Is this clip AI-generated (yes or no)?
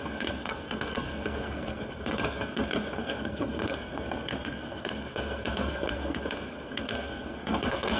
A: yes